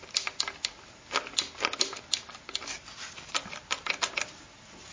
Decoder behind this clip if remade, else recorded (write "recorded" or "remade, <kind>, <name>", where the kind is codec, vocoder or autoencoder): recorded